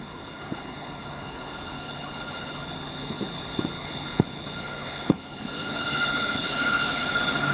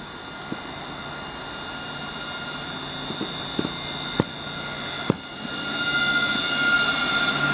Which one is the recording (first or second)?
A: second